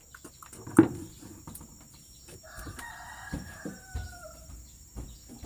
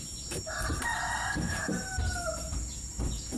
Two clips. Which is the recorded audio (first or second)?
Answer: second